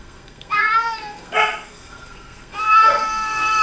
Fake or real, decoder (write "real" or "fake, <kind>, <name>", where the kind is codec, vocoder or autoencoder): fake, codec, SNAC